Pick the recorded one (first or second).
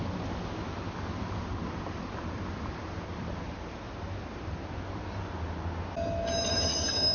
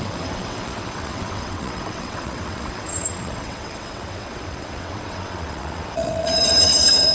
first